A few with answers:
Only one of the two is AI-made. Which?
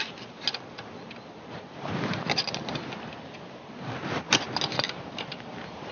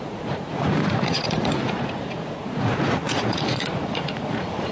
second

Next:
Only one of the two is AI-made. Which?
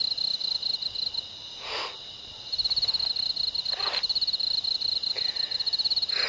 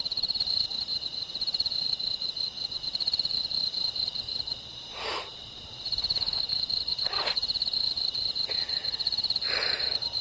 second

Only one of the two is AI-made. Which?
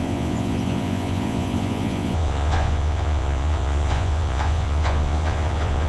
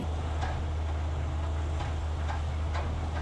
first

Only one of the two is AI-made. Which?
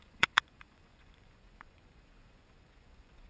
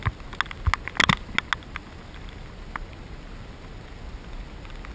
first